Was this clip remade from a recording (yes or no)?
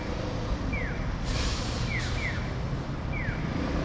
no